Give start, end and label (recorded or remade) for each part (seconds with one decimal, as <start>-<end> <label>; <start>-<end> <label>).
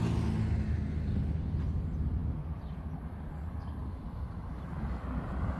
0.0-3.8 recorded; 3.8-5.6 remade